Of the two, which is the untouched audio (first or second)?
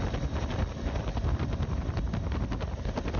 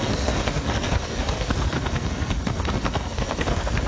first